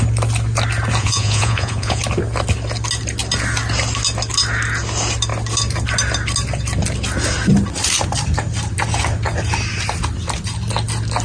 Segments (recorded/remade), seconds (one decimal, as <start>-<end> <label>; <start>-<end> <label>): 0.0-1.0 recorded; 1.0-2.0 remade; 2.0-11.2 recorded